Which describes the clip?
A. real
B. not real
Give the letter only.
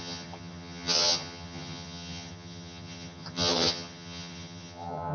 B